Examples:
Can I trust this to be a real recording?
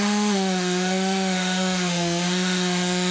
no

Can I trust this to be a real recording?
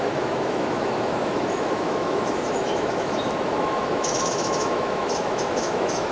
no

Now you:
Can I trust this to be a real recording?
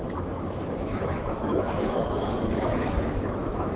no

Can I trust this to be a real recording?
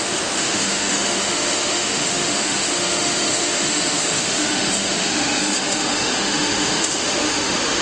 no